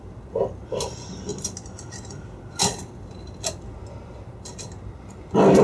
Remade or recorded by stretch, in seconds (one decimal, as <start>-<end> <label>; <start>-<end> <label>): 0.0-5.6 recorded